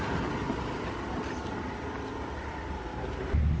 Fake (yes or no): no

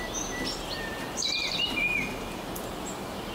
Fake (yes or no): no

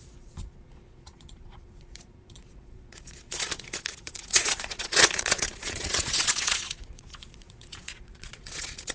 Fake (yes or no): yes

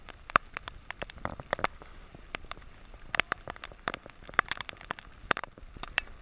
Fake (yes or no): yes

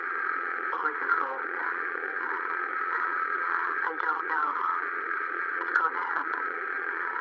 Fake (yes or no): yes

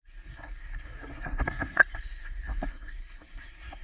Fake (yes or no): yes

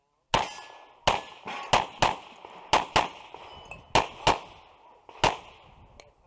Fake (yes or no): no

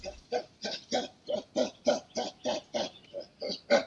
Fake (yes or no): no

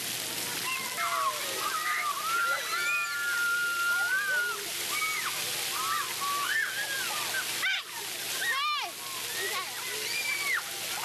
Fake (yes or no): no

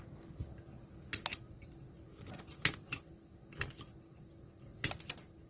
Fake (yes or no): no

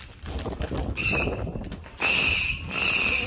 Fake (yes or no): no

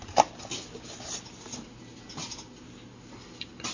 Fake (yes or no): no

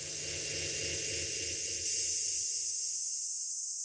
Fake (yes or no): no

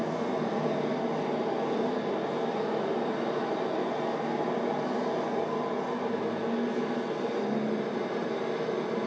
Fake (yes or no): no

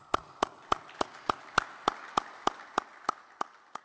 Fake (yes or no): no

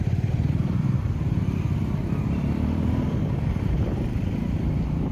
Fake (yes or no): yes